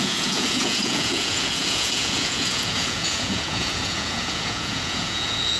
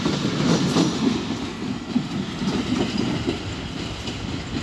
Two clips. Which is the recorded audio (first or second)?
second